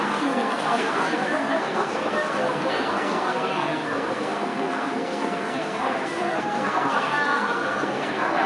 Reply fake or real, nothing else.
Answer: fake